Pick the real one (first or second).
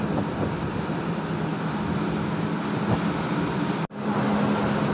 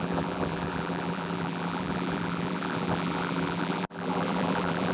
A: first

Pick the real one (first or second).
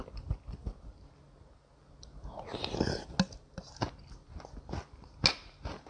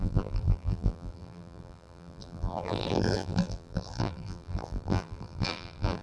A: first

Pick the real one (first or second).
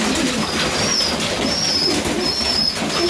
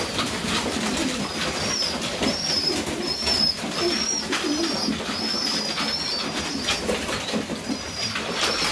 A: first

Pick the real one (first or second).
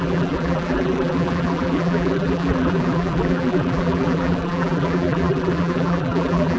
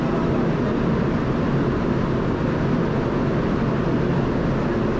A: second